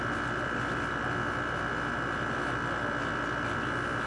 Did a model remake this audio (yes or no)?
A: no